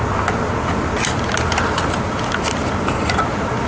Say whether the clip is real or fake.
real